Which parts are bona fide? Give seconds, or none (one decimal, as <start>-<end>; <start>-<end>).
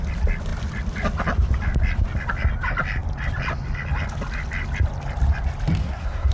0.0-5.8